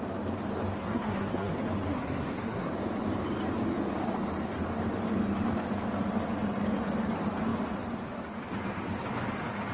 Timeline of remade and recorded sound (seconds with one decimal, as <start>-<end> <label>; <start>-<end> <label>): 0.0-0.8 recorded; 0.8-1.5 remade; 1.5-1.9 recorded; 1.9-2.7 remade; 2.7-9.7 recorded